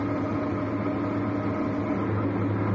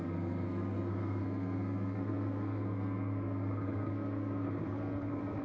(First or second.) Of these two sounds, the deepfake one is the second